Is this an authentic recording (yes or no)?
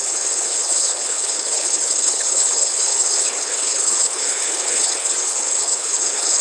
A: no